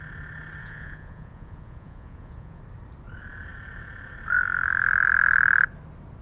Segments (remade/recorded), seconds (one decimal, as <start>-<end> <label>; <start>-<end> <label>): 0.0-0.6 recorded; 0.6-2.6 remade; 2.6-6.2 recorded